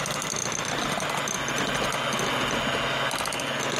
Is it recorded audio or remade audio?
recorded